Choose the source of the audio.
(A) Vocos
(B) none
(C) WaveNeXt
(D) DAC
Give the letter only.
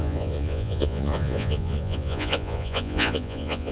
A